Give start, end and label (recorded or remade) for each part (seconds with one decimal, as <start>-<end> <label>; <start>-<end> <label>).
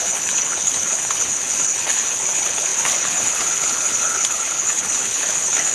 0.0-5.7 remade